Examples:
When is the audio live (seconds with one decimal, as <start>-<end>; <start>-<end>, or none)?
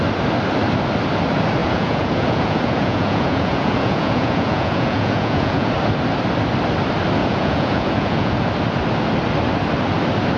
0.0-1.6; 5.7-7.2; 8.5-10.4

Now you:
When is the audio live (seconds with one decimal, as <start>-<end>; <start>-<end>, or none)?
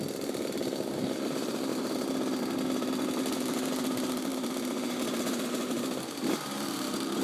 1.7-3.2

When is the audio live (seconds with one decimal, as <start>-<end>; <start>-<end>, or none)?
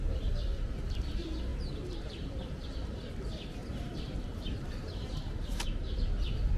0.0-1.5; 3.1-3.6; 6.1-6.6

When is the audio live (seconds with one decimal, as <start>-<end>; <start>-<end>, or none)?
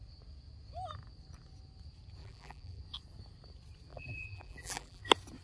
0.0-2.2; 2.8-3.9; 5.0-5.4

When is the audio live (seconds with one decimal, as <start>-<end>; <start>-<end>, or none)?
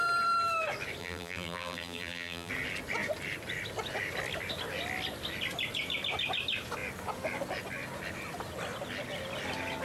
0.0-1.0; 2.5-9.8